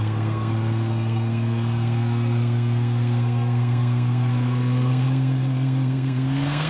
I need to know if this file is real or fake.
fake